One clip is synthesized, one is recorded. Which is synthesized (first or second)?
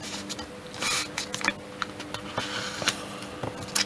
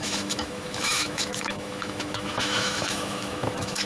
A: second